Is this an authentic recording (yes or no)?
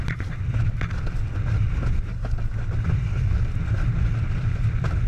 yes